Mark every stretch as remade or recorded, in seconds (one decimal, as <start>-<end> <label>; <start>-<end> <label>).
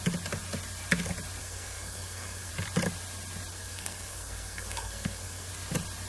0.0-1.4 recorded; 1.4-2.5 remade; 2.5-3.5 recorded; 3.5-5.5 remade; 5.5-6.1 recorded